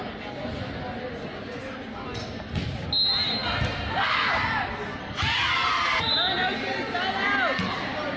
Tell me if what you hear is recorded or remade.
recorded